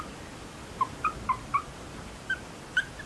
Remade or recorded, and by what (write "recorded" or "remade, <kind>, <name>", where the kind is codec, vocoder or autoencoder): remade, vocoder, BigVGAN v2